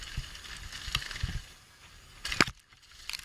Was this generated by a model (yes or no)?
no